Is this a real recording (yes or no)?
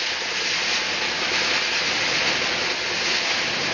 yes